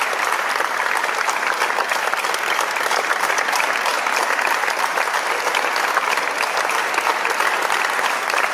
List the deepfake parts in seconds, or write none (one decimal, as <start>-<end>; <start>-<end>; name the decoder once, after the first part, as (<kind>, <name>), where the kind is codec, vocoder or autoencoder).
none

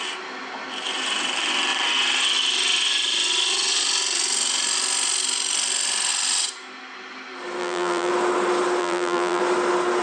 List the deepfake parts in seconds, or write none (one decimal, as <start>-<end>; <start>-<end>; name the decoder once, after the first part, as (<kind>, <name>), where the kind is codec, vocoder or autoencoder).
7.6-8.1 (vocoder, BigVGAN v2); 8.8-9.4

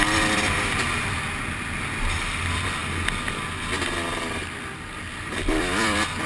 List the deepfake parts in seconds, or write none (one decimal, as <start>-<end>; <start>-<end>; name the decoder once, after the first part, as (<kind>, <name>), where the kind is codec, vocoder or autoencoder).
0.0-2.8 (vocoder, BigVGAN v2); 5.0-6.3

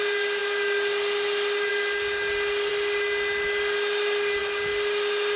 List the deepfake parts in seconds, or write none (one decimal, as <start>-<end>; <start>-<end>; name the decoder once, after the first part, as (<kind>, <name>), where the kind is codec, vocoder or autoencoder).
none

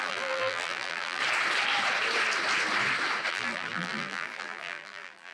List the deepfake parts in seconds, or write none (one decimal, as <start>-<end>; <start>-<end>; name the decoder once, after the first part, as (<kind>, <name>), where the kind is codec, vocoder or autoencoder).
0.0-1.2 (vocoder, BigVGAN v2); 3.3-5.3

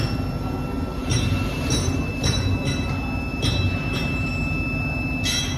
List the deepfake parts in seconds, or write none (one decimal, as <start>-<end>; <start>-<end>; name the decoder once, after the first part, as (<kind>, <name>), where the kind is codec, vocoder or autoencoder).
0.9-2.5 (vocoder, BigVGAN v2); 3.3-4.3

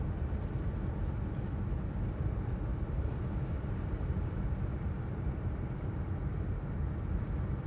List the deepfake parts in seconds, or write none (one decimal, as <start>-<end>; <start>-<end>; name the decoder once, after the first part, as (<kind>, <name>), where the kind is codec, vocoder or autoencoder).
2.7-6.0 (vocoder, BigVGAN v2)

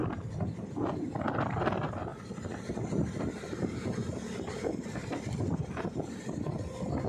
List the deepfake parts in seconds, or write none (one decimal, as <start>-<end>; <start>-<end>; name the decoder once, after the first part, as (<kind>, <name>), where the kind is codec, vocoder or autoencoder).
0.0-0.7 (vocoder, BigVGAN v2); 5.0-6.2